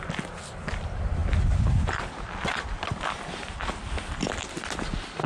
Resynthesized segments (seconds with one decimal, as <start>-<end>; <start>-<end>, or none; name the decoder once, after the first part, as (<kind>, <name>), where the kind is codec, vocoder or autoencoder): none